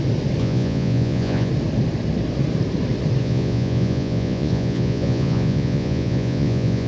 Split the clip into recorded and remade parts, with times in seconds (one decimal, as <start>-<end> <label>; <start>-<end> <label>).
0.0-0.4 recorded; 0.4-1.5 remade; 1.5-3.2 recorded; 3.2-6.9 remade